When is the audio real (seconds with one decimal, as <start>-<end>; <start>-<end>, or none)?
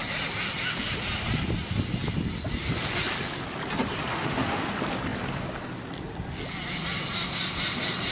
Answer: 0.0-4.1; 4.6-8.1